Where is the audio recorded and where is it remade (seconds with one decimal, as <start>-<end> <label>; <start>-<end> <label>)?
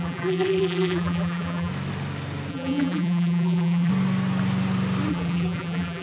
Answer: 0.0-1.7 remade; 1.7-2.5 recorded; 2.5-3.9 remade; 3.9-5.1 recorded; 5.1-6.0 remade